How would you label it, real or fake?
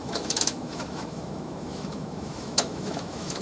fake